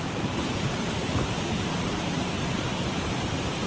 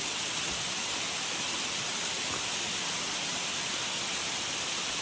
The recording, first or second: second